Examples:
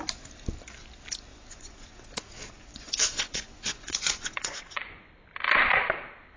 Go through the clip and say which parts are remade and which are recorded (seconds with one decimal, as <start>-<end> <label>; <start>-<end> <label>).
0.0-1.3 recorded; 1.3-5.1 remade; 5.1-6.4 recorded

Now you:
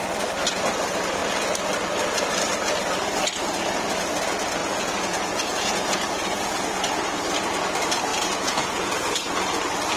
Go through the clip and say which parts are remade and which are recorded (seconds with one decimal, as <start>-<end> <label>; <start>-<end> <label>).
0.0-4.6 recorded; 4.6-7.2 remade; 7.2-8.1 recorded; 8.1-9.5 remade; 9.5-10.0 recorded

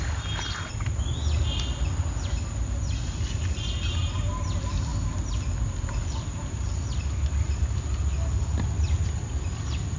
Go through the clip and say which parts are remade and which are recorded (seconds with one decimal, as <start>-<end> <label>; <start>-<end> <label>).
0.0-10.0 recorded

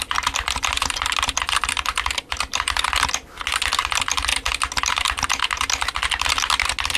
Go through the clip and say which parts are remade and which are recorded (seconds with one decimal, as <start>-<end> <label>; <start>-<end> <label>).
0.0-7.0 recorded

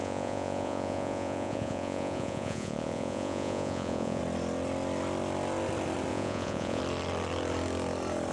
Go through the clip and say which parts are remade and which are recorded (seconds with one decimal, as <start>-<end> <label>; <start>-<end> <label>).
0.0-4.2 remade; 4.2-6.1 recorded; 6.1-6.8 remade; 6.8-8.3 recorded

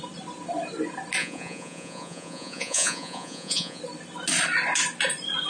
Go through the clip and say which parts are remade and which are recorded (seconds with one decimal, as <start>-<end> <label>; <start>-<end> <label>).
0.0-1.2 recorded; 1.2-3.8 remade; 3.8-5.5 recorded

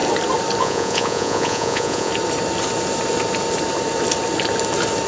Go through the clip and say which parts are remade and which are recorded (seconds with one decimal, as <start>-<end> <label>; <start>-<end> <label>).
0.0-0.6 recorded; 0.6-2.1 remade; 2.1-5.1 recorded

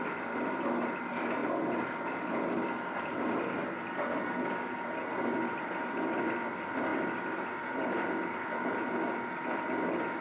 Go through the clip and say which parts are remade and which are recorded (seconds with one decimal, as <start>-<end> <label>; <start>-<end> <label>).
0.0-10.2 recorded